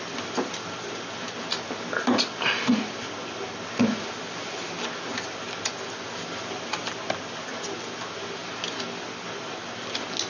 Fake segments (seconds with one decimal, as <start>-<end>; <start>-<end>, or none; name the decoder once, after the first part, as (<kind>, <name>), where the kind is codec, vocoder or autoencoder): none

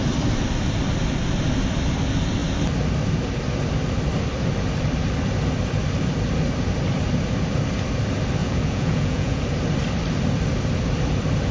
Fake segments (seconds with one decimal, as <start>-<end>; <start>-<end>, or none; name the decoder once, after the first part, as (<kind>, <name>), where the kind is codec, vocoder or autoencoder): 8.4-9.4 (vocoder, Vocos)

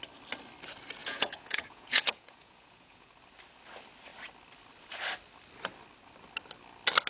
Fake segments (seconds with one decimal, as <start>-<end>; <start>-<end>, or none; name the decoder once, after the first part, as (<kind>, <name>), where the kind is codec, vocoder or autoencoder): 1.0-3.1 (vocoder, Vocos)

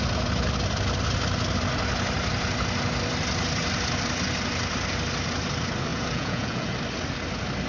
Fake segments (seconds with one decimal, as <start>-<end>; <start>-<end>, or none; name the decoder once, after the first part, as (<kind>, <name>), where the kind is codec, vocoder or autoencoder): 5.9-6.7 (vocoder, Vocos)

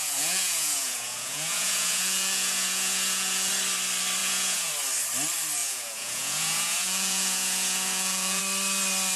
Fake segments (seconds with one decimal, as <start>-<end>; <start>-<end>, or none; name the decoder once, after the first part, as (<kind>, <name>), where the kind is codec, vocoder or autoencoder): 0.0-3.5 (vocoder, Vocos); 4.2-4.7; 5.6-8.4

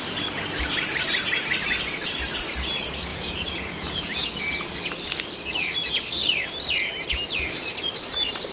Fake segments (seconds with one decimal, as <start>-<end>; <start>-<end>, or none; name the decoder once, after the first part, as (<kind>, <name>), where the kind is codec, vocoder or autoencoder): 3.1-4.3 (vocoder, Vocos)